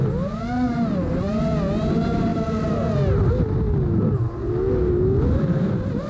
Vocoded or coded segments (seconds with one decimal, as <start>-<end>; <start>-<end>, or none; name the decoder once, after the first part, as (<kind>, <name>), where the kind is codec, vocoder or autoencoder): none